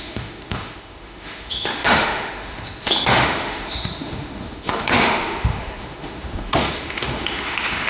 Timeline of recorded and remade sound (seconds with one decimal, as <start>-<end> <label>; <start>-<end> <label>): 0.0-7.9 remade